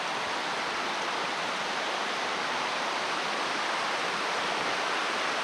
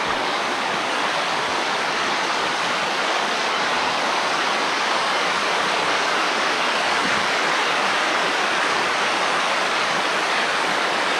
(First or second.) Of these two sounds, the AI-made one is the second